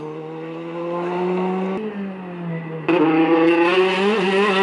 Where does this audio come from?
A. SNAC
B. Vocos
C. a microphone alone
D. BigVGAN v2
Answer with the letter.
C